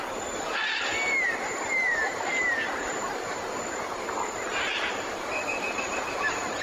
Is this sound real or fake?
fake